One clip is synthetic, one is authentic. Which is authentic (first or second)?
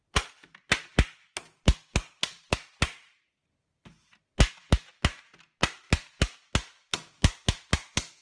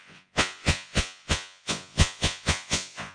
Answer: first